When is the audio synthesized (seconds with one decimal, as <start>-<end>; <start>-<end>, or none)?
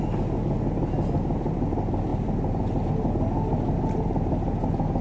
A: none